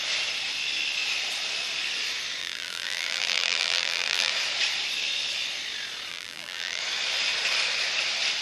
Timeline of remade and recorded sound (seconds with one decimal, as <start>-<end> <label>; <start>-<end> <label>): 0.0-2.4 recorded; 2.4-4.3 remade; 4.3-6.1 recorded; 6.1-6.8 remade; 6.8-8.4 recorded